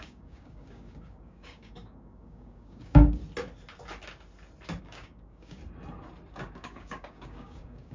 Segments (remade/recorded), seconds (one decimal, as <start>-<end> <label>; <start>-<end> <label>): 0.0-3.2 remade; 3.2-4.8 recorded; 4.8-5.6 remade; 5.6-6.3 recorded; 6.3-7.9 remade

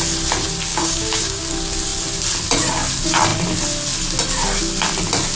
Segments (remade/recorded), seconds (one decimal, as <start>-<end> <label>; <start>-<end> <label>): 0.0-0.7 recorded; 0.7-1.4 remade; 1.4-5.4 recorded

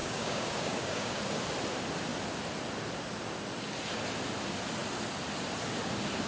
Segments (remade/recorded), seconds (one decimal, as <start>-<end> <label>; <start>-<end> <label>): 0.0-1.2 remade; 1.2-6.3 recorded

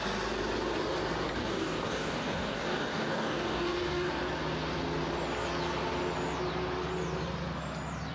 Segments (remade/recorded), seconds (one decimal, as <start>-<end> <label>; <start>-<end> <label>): 0.0-1.4 recorded; 1.4-4.1 remade; 4.1-8.1 recorded